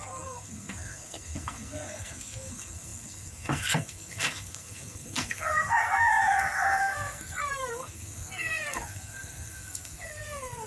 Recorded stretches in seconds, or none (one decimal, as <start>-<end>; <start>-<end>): none

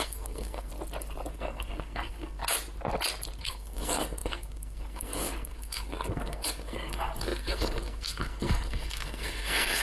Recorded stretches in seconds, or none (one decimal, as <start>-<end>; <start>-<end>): 0.7-1.3; 2.4-3.4